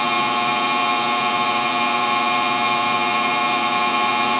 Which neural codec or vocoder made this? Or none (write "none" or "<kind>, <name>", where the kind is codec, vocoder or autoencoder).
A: vocoder, Vocos